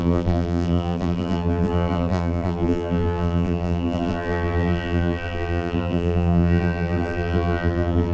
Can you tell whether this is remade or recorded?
remade